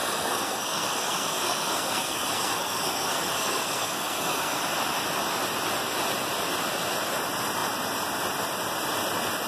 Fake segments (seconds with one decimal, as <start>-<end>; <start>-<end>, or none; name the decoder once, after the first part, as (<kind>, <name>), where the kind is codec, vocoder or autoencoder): 0.0-4.6 (codec, SNAC)